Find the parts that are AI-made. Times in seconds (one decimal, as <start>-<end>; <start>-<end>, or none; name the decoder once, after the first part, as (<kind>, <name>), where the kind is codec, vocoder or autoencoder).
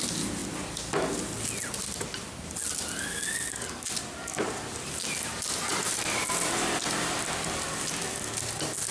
5.7-7.2 (vocoder, BigVGAN v2)